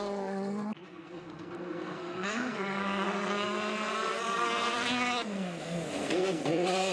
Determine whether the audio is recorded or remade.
remade